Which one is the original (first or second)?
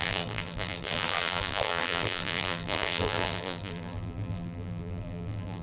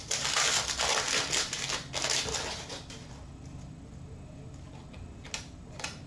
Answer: second